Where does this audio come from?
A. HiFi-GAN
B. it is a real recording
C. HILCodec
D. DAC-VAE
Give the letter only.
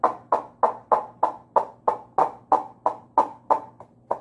B